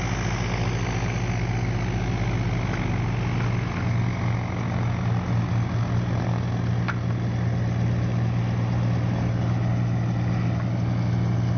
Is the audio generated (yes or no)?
no